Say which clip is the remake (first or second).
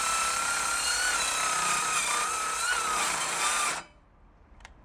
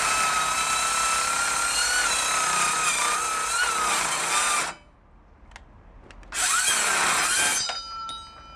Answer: first